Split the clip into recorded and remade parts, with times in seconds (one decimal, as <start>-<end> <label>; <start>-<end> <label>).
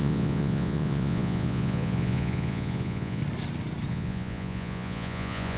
0.0-3.2 remade; 3.2-3.9 recorded; 3.9-5.6 remade